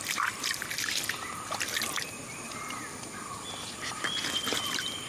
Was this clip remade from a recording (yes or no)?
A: no